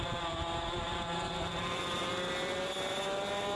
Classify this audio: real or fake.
real